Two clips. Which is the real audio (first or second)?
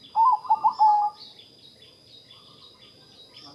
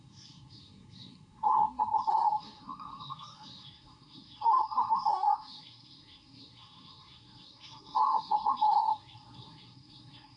first